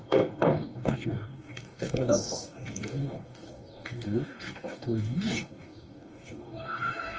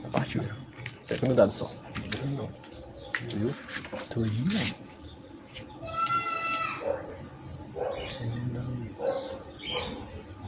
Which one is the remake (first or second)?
first